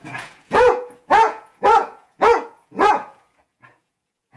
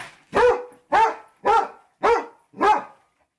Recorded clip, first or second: second